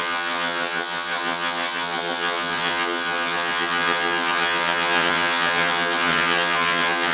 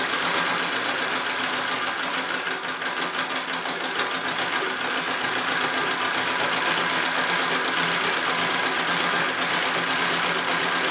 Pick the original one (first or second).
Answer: second